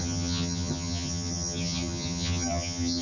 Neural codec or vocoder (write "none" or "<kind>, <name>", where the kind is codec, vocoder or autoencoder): vocoder, HiFi-GAN